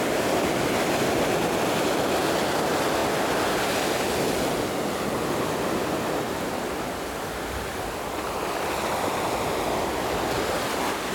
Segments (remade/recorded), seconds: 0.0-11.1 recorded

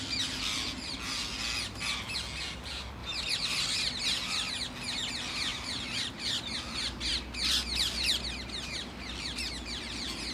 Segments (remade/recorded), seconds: 0.0-3.0 recorded; 3.0-3.6 remade; 3.6-5.5 recorded; 5.5-6.3 remade; 6.3-10.3 recorded

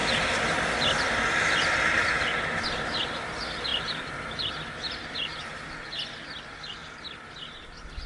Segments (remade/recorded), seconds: 0.0-3.7 recorded; 3.7-4.5 remade; 4.5-8.1 recorded

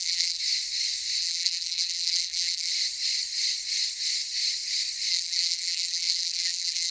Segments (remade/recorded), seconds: 0.0-0.4 remade; 0.4-1.2 recorded; 1.2-2.7 remade; 2.7-5.1 recorded; 5.1-6.9 remade

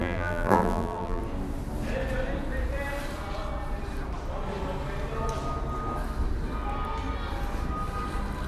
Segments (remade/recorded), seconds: 0.0-1.2 remade; 1.2-8.5 recorded

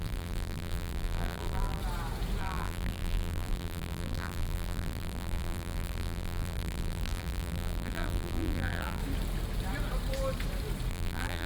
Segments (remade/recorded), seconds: 0.0-1.8 remade; 1.8-2.4 recorded; 2.4-9.0 remade; 9.0-10.9 recorded; 10.9-11.5 remade